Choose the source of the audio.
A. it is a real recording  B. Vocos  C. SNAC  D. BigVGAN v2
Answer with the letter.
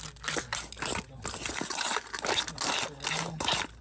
A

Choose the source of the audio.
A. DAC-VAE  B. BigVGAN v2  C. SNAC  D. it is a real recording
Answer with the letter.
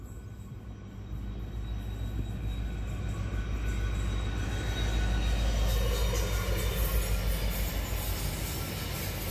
D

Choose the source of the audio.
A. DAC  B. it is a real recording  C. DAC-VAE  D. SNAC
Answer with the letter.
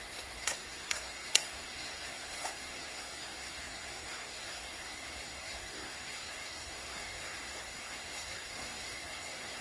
D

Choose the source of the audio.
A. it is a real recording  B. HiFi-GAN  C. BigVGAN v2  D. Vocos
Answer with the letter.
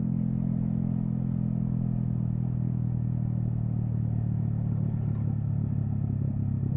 A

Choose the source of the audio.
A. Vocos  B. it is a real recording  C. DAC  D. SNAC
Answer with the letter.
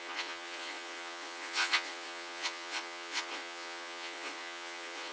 A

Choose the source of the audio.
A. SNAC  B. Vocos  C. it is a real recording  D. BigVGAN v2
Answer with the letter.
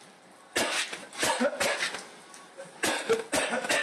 C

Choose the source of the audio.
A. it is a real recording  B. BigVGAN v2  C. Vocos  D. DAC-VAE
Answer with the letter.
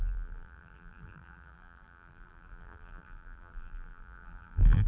B